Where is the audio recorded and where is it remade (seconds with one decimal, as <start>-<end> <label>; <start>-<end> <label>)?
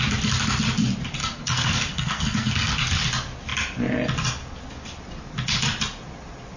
0.0-1.2 recorded; 1.2-2.7 remade; 2.7-6.6 recorded